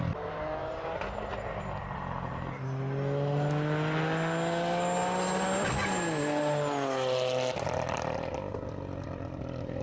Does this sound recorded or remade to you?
recorded